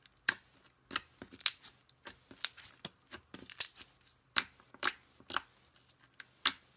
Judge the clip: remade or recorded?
recorded